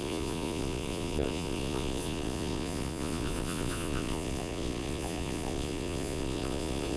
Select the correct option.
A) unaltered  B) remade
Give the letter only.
B